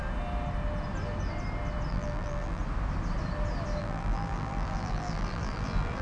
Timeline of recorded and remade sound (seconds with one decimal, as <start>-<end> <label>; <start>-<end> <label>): 0.0-1.9 recorded; 1.9-2.6 remade; 2.6-3.8 recorded; 3.8-6.0 remade